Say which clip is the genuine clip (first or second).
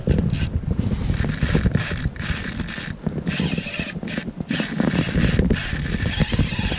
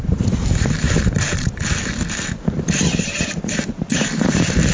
first